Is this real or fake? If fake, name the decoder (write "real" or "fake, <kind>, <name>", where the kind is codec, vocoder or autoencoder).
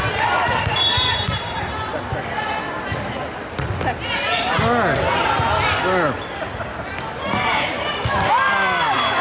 real